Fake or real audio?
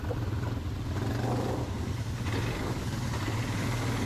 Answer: real